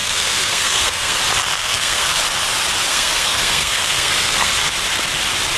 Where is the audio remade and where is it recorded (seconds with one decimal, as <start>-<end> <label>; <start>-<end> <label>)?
0.0-1.2 remade; 1.2-1.6 recorded; 1.6-2.2 remade; 2.2-2.9 recorded; 2.9-4.5 remade; 4.5-5.6 recorded